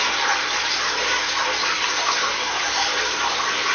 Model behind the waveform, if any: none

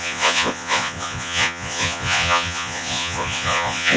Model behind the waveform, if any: vocoder, Vocos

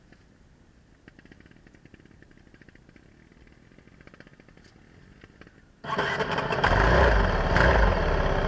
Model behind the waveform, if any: none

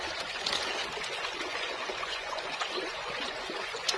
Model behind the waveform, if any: vocoder, Vocos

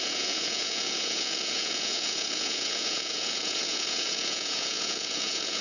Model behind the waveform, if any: vocoder, Vocos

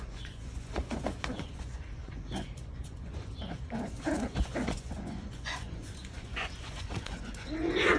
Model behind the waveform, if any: vocoder, Vocos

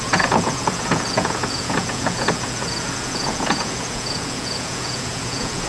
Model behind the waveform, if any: vocoder, Vocos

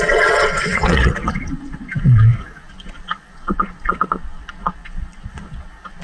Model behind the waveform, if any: vocoder, Vocos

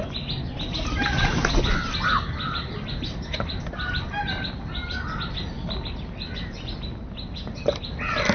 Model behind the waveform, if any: none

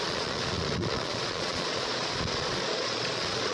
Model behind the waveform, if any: vocoder, Vocos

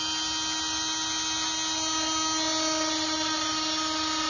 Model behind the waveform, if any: none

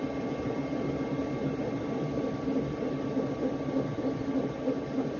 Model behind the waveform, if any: none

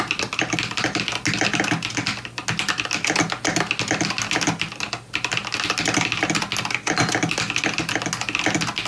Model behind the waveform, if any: none